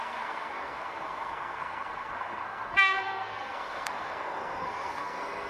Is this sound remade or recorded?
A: remade